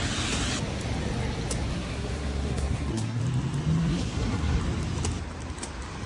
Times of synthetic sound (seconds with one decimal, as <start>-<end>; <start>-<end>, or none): 1.7-3.2; 3.8-4.6